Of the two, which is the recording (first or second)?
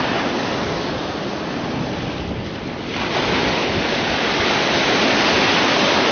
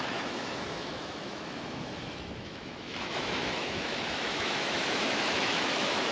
first